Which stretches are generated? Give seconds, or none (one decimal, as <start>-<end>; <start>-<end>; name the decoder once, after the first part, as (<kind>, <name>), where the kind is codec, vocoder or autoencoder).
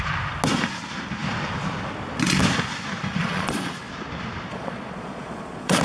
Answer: 3.2-3.9 (vocoder, Vocos); 4.5-5.8